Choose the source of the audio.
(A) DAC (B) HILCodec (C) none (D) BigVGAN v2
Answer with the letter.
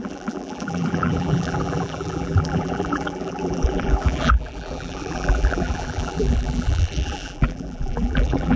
D